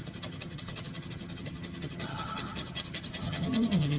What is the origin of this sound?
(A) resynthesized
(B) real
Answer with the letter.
A